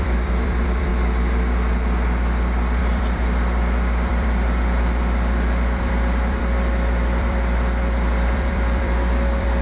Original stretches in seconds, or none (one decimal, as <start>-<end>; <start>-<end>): 0.9-2.8